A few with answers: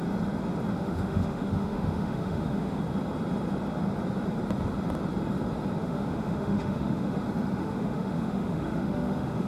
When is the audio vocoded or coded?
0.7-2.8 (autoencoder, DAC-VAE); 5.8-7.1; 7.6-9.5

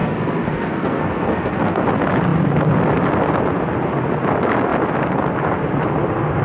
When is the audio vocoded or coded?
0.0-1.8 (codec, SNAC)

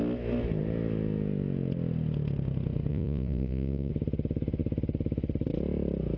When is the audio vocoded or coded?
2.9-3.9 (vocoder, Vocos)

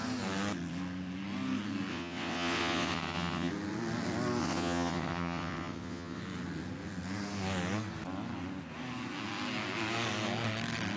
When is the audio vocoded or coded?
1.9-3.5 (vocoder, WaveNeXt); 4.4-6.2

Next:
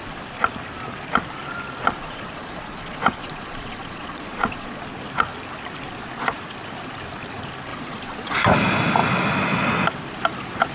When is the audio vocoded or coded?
2.0-4.8 (vocoder, Vocos); 7.7-8.4

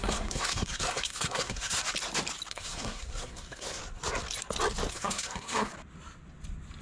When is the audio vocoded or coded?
0.0-1.8 (codec, SNAC); 2.5-3.8; 4.9-5.7

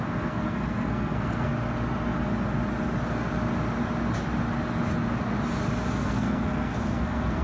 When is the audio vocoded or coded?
0.0-1.5 (codec, SNAC); 5.9-7.4

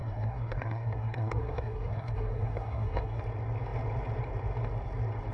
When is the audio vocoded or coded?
0.0-3.2 (codec, SNAC)